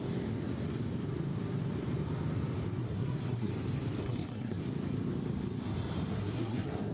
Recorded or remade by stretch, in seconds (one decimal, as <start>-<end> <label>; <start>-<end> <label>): 0.0-2.8 recorded; 2.8-3.5 remade; 3.5-4.0 recorded; 4.0-4.6 remade; 4.6-6.1 recorded; 6.1-6.9 remade